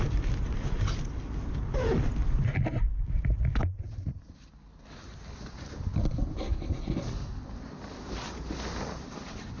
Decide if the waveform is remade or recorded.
recorded